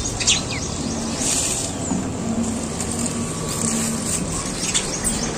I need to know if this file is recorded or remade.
recorded